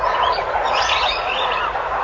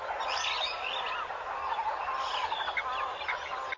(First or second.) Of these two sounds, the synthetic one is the first